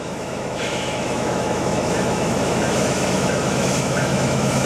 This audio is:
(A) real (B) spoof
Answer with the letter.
B